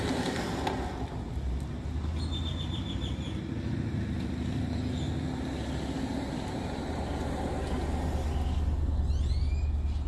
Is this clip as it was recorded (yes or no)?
yes